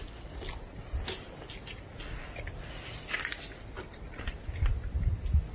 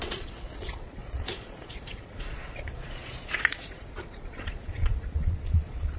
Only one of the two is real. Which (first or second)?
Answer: first